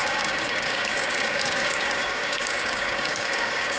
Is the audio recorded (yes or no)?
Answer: no